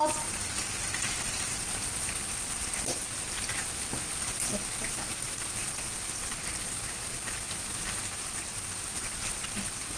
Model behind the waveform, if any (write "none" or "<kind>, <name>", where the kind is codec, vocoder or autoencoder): none